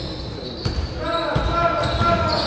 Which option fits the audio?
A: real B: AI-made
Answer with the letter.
A